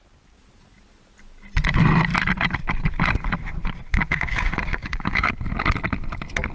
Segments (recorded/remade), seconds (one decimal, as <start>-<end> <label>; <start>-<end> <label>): 0.0-3.9 recorded; 3.9-5.3 remade; 5.3-6.5 recorded